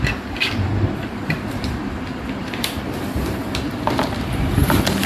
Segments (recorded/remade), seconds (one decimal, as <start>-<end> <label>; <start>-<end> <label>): 0.0-0.7 recorded; 0.7-1.9 remade; 1.9-2.4 recorded; 2.4-5.1 remade